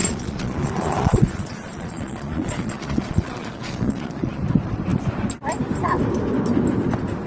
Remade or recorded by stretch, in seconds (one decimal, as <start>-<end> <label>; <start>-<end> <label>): 0.0-4.4 remade; 4.4-7.3 recorded